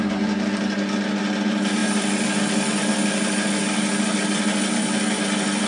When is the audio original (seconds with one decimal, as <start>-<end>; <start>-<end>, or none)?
0.0-5.7